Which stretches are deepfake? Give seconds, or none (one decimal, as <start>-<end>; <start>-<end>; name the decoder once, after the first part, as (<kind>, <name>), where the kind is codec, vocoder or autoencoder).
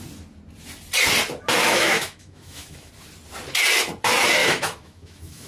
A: 1.6-2.9 (autoencoder, DAC-VAE); 4.4-5.5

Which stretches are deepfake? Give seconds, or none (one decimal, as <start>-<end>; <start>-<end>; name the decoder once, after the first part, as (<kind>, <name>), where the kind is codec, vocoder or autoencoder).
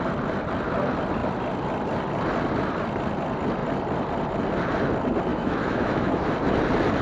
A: 5.3-6.3 (autoencoder, DAC-VAE)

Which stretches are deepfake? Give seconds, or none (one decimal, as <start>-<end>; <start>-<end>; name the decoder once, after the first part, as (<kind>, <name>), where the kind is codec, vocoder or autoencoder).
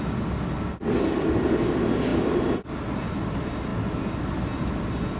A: none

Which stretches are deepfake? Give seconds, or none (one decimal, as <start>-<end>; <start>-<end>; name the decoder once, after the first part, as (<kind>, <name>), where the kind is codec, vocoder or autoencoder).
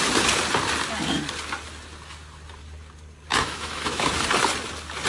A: 3.3-4.1 (autoencoder, DAC-VAE)